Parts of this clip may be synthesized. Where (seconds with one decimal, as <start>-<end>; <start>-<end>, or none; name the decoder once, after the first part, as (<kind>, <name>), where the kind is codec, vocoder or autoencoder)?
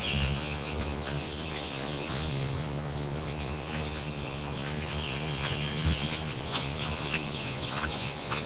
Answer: 0.0-8.5 (vocoder, Vocos)